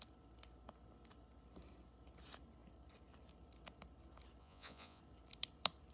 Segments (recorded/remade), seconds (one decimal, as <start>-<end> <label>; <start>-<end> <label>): 0.0-4.4 recorded; 4.4-5.0 remade; 5.0-5.9 recorded